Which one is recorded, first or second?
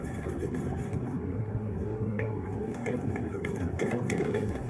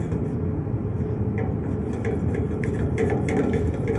second